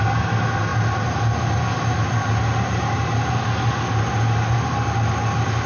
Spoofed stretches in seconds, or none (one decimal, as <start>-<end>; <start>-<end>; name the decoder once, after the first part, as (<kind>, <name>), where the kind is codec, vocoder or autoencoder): none